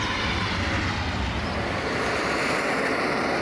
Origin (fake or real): real